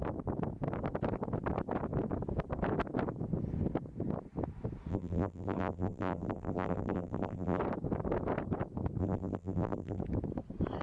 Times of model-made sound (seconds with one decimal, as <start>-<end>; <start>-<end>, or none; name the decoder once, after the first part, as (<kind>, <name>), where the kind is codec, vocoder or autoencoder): 4.9-7.6 (vocoder, BigVGAN v2); 9.0-10.0